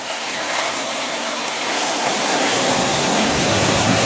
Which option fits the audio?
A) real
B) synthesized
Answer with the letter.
B